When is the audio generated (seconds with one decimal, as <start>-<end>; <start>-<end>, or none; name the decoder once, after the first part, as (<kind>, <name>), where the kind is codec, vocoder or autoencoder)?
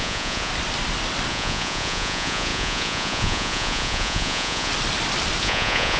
0.0-0.5 (vocoder, Vocos); 1.3-4.7; 5.4-6.0